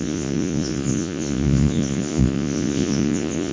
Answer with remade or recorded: remade